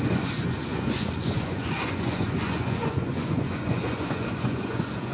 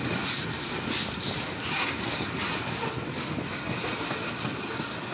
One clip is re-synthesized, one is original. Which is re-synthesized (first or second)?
first